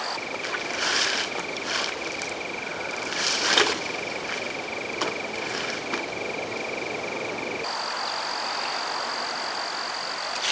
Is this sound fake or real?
real